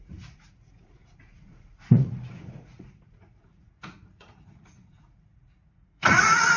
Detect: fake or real fake